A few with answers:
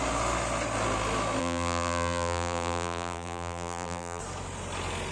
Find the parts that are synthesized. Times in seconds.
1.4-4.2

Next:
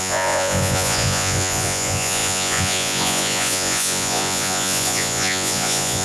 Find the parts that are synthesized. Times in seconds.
0.0-6.0

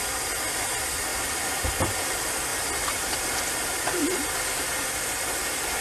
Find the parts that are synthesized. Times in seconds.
1.1-1.7

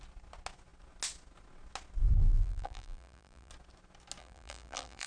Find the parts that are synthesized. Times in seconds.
2.2-3.5; 4.2-5.1

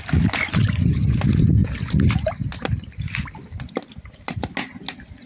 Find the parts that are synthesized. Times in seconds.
none

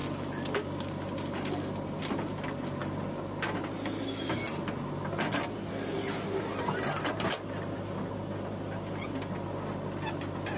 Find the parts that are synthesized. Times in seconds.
none